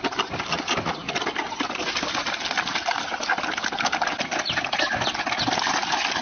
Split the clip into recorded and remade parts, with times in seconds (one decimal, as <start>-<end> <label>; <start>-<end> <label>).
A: 0.0-6.2 recorded